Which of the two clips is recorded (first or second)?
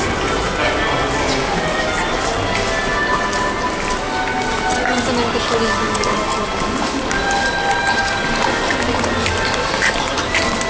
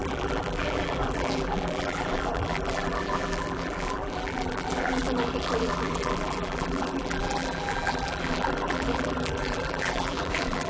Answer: first